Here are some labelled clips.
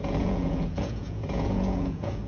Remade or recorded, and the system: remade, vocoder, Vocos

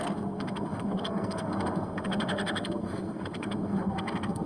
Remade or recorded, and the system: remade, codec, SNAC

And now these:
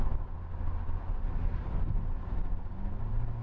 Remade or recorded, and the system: recorded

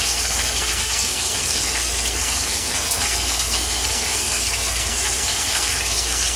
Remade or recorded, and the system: remade, codec, SNAC